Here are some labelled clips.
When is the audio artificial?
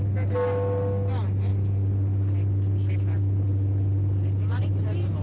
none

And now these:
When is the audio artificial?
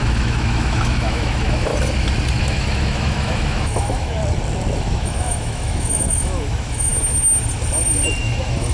0.0-1.7; 2.4-4.2; 4.8-6.9; 8.2-8.7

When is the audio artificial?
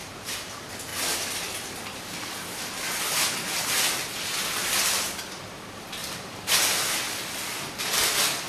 0.0-0.5; 6.0-6.6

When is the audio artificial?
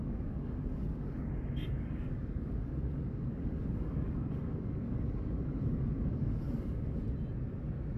0.0-7.0